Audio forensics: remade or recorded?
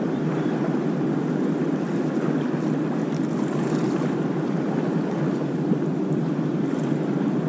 recorded